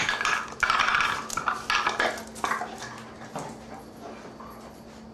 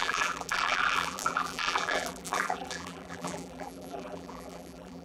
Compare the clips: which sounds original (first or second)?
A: first